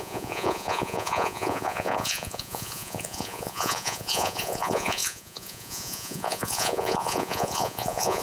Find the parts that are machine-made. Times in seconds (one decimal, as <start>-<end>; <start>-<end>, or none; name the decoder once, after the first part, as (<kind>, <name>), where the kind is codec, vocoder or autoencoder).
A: 0.0-8.2 (vocoder, Vocos)